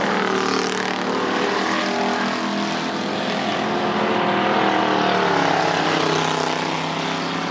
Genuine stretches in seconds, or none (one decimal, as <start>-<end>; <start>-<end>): 0.0-7.5